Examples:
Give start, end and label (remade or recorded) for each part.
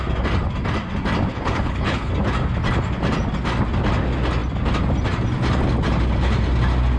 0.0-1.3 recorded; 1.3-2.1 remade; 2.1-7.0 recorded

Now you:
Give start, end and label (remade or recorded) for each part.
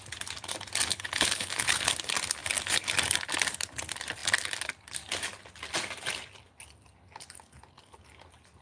0.0-0.9 recorded; 0.9-1.9 remade; 1.9-8.6 recorded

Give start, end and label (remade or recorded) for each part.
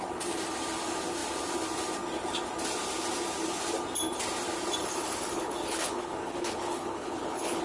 0.0-4.8 recorded; 4.8-7.6 remade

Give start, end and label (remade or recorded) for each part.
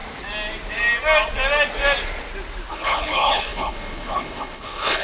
0.0-2.7 recorded; 2.7-5.0 remade